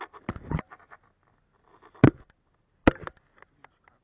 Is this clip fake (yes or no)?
no